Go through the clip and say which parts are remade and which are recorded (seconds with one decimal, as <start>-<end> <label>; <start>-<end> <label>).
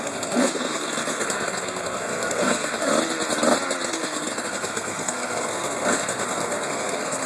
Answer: 0.0-2.9 remade; 2.9-3.9 recorded; 3.9-7.3 remade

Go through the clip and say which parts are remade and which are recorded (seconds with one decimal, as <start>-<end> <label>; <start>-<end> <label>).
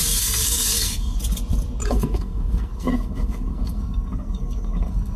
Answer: 0.0-1.2 remade; 1.2-1.8 recorded; 1.8-5.2 remade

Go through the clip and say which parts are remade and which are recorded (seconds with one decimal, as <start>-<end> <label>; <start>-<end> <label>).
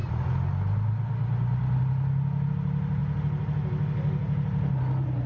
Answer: 0.0-5.3 recorded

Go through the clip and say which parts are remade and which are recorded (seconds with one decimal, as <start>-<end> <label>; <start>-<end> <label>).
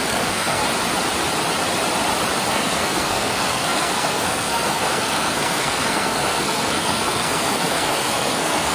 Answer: 0.0-0.6 remade; 0.6-2.5 recorded; 2.5-8.7 remade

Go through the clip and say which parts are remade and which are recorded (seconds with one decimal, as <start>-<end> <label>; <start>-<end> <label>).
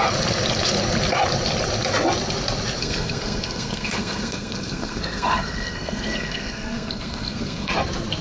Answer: 0.0-2.8 recorded; 2.8-7.7 remade; 7.7-8.2 recorded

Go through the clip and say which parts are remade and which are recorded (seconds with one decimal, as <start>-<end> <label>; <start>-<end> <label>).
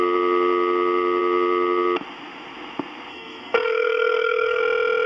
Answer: 0.0-3.1 recorded; 3.1-4.6 remade; 4.6-5.1 recorded